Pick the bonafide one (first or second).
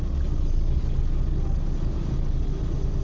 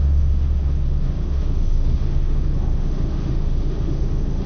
first